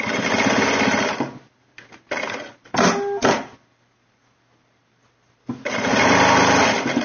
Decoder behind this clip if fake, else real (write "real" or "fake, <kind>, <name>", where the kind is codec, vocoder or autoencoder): real